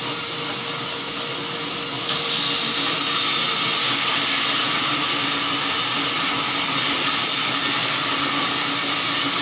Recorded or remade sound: recorded